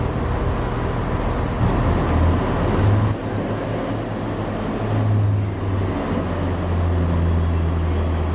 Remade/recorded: recorded